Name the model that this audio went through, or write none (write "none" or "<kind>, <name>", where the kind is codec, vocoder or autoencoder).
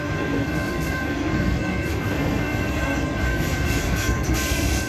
codec, SNAC